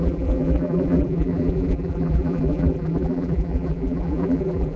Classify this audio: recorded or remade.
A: remade